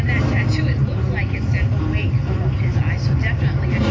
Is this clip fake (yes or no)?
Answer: no